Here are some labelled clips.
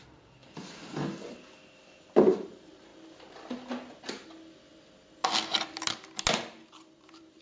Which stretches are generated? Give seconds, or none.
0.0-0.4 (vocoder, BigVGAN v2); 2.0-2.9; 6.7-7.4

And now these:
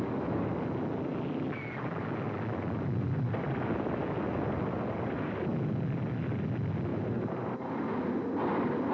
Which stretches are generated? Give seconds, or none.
6.9-7.6 (vocoder, BigVGAN v2)

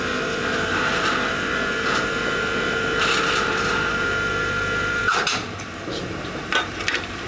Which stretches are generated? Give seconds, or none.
0.0-5.0 (vocoder, BigVGAN v2); 5.6-7.3

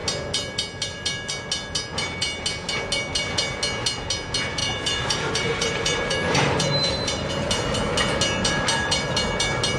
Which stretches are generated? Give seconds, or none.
4.6-7.3 (vocoder, BigVGAN v2)

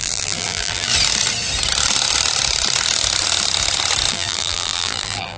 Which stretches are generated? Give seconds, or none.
0.0-0.9 (vocoder, BigVGAN v2); 4.1-5.4

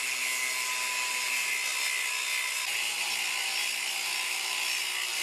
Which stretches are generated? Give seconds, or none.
1.7-4.8 (vocoder, BigVGAN v2)